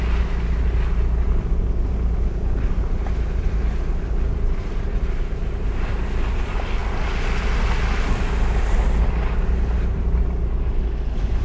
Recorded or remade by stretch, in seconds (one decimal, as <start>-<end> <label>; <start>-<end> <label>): 0.0-11.4 recorded